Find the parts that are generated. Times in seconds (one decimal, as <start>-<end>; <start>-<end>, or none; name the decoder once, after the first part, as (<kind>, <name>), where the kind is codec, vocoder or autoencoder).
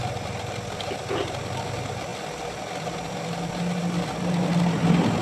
0.0-0.8 (vocoder, BigVGAN v2); 2.1-3.5